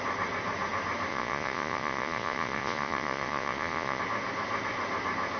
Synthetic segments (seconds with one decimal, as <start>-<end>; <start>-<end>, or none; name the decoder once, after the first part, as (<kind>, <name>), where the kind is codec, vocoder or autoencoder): 1.1-4.0 (vocoder, Vocos)